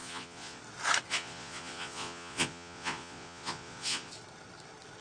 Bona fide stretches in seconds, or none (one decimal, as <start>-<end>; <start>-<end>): 0.6-1.1; 4.1-5.0